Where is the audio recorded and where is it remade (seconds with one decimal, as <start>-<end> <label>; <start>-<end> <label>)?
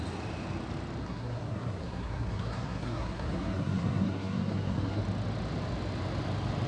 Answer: 0.0-1.0 recorded; 1.0-5.0 remade; 5.0-6.7 recorded